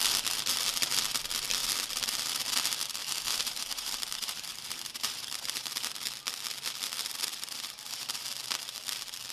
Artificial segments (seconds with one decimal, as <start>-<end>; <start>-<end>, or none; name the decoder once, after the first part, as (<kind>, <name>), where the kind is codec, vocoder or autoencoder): 3.0-5.7 (vocoder, BigVGAN v2); 7.3-8.2